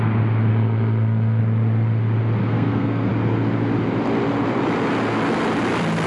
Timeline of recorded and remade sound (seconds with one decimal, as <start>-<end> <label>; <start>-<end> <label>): 0.0-0.5 recorded; 0.5-1.4 remade; 1.4-2.4 recorded; 2.4-3.1 remade; 3.1-6.1 recorded